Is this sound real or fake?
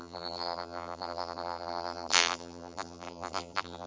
fake